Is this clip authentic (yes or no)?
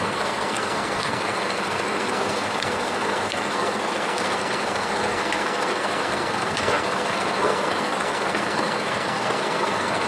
no